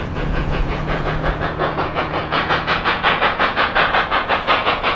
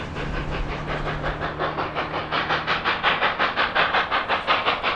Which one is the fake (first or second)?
first